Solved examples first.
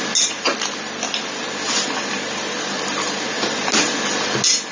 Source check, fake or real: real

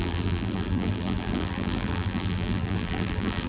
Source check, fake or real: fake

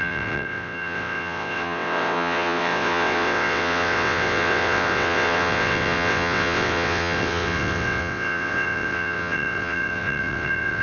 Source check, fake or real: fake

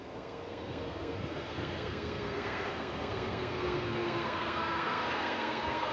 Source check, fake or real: fake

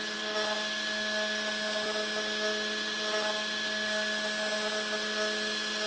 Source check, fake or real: real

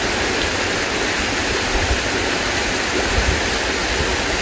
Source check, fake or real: real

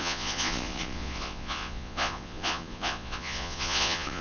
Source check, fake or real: fake